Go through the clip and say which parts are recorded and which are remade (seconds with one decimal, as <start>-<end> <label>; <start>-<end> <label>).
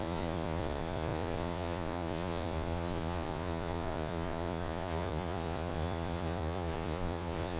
0.0-7.6 remade